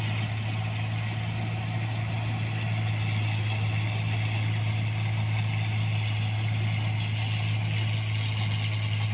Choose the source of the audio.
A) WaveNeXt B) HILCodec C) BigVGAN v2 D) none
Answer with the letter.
D